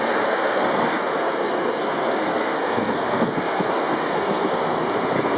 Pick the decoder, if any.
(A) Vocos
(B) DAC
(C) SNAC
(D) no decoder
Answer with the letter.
C